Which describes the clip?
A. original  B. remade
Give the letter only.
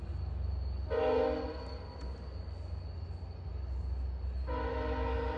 A